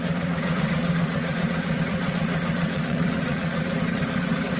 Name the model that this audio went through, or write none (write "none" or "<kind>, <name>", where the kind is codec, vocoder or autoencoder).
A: vocoder, Vocos